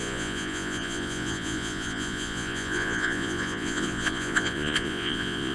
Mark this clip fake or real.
fake